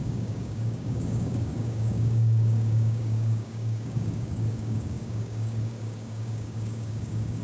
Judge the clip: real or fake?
fake